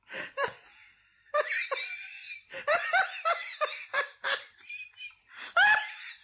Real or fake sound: fake